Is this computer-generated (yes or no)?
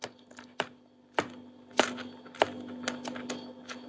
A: no